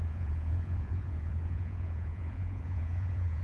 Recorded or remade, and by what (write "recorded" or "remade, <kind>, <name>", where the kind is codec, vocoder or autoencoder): remade, vocoder, Vocos